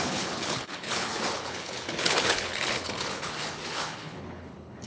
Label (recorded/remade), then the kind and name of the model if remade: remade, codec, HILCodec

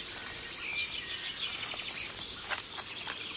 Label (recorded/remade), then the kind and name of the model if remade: recorded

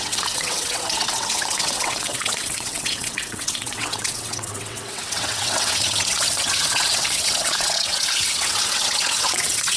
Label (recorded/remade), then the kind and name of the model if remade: remade, vocoder, WaveNeXt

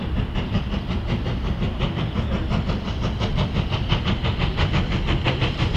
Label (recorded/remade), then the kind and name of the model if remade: recorded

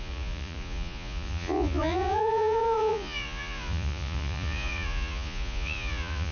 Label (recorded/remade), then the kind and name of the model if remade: remade, vocoder, Vocos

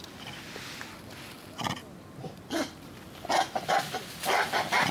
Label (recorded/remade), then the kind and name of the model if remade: recorded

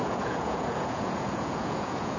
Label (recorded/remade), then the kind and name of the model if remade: remade, vocoder, Vocos